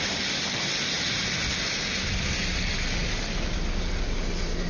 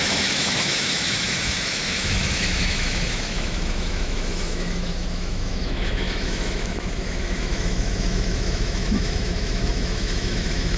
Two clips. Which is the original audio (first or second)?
first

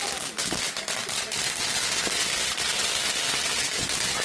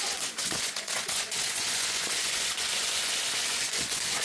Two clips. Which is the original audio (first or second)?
first